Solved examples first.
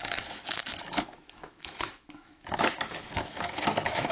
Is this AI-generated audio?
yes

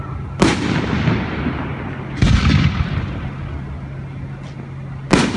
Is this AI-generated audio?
no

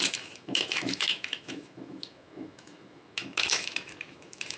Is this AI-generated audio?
yes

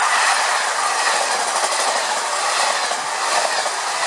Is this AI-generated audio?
no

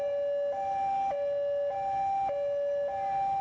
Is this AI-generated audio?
no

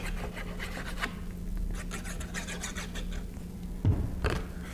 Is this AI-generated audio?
no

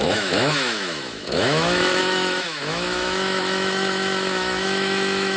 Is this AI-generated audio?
yes